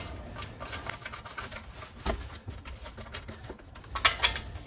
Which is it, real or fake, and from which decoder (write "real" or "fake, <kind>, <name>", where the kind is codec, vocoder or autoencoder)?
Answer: real